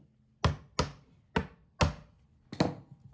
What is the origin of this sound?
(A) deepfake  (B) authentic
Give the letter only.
B